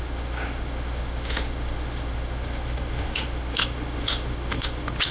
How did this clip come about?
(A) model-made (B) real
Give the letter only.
A